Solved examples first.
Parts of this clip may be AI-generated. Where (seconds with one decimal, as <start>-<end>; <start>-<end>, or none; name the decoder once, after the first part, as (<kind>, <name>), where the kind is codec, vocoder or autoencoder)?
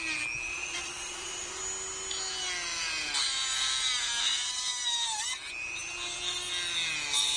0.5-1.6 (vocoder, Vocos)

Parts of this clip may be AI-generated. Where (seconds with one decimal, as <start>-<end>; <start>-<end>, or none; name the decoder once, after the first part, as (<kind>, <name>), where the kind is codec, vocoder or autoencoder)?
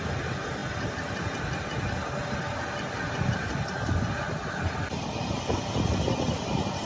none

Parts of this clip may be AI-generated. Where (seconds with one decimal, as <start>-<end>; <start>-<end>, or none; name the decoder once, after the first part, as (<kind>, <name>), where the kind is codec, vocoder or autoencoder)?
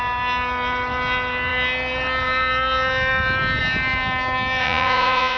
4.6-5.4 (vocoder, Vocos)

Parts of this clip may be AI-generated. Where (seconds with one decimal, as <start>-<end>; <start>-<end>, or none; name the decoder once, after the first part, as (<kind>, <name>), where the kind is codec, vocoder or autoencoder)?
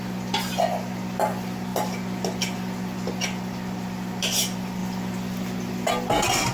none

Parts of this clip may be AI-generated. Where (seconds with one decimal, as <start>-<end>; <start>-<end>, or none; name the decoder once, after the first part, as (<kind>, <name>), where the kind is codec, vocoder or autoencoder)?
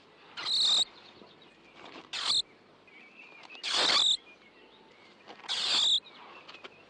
none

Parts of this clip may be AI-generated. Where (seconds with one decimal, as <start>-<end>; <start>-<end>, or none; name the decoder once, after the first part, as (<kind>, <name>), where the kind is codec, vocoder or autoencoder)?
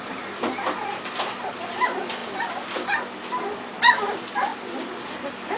none